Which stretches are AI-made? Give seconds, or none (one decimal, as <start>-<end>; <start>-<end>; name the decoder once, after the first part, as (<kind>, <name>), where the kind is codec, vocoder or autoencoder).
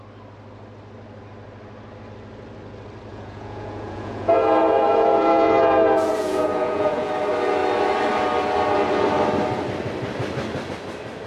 3.1-7.1 (vocoder, Vocos)